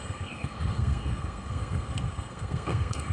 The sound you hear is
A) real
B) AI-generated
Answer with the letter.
B